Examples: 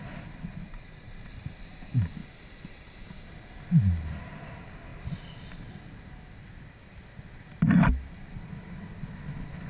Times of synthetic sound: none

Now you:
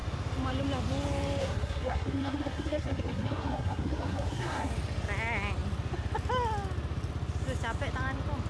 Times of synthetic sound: 1.4-4.7

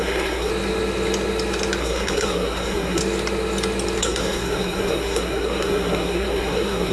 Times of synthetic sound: 0.0-0.5; 1.8-3.0; 4.0-6.9

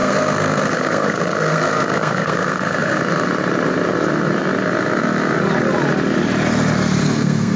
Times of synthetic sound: 0.0-3.0; 7.0-7.6

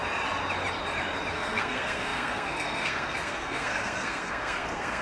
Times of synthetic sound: 1.3-5.0

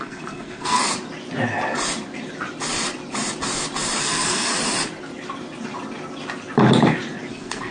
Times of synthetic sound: 0.0-0.8; 4.0-4.5; 7.3-7.7

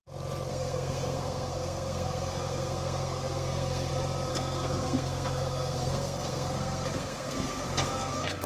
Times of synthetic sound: 0.5-3.9; 4.3-8.5

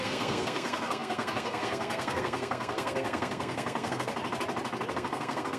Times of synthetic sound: 0.0-4.1; 4.9-5.6